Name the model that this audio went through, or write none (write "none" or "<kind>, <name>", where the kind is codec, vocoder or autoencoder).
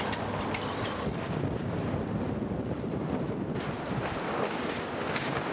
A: none